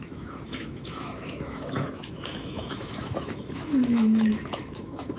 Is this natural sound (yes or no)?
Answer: no